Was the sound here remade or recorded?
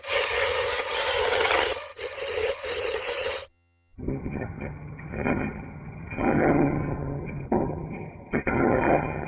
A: remade